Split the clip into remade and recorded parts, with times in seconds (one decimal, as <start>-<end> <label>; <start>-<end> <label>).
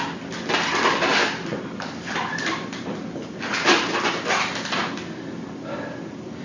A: 0.0-6.4 recorded